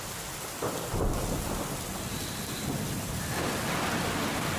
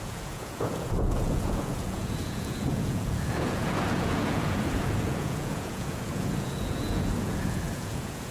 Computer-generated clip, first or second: second